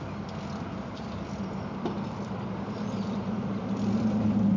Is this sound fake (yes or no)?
yes